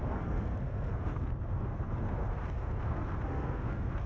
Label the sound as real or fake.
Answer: fake